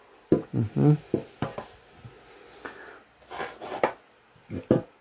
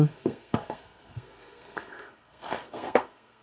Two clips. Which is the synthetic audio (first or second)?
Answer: second